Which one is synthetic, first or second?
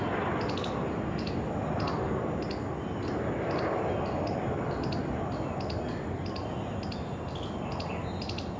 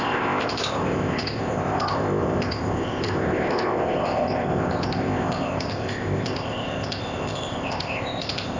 second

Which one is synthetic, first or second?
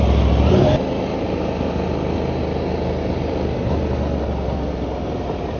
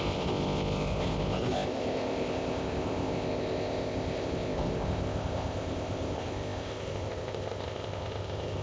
second